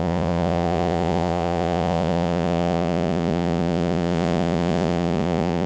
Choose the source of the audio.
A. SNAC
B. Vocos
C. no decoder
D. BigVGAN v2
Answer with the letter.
B